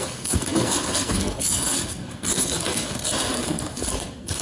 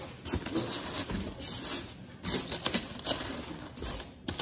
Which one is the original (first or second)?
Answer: second